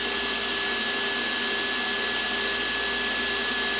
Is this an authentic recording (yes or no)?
yes